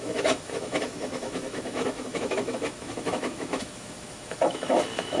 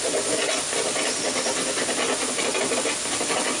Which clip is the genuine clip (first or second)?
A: second